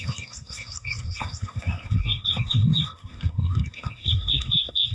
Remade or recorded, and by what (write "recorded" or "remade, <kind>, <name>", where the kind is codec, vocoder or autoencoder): remade, codec, SNAC